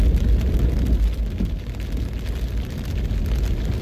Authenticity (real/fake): real